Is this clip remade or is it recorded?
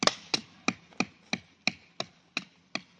recorded